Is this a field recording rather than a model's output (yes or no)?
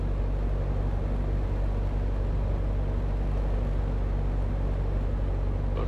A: yes